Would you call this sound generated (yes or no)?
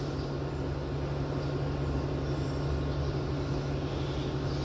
no